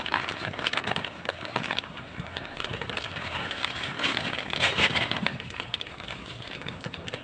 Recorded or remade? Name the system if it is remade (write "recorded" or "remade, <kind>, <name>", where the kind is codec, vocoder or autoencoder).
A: remade, codec, SNAC